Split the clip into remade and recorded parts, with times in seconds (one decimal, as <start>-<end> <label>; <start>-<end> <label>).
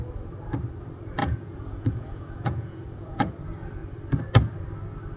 0.0-1.2 recorded; 1.2-3.3 remade; 3.3-5.2 recorded